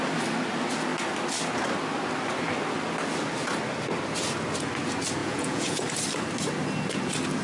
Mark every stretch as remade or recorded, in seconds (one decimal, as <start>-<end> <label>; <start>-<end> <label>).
0.0-5.2 recorded; 5.2-5.8 remade; 5.8-7.4 recorded